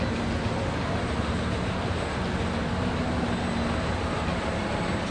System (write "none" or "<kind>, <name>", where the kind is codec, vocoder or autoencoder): none